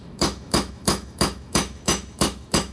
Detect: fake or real fake